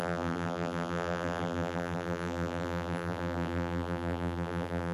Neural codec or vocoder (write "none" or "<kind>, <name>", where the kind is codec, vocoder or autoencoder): vocoder, BigVGAN v2